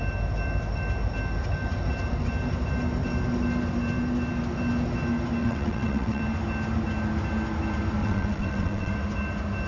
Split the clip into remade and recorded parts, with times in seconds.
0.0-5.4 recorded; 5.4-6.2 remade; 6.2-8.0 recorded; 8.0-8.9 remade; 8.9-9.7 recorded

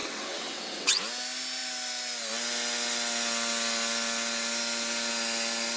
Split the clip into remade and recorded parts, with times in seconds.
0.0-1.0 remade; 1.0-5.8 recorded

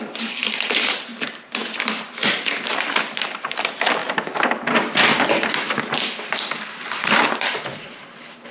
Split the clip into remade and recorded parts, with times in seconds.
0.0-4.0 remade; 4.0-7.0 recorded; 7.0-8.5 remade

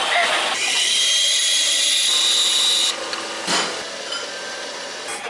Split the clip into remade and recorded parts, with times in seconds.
0.0-5.3 recorded